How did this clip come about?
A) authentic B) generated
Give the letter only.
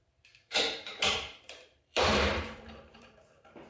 B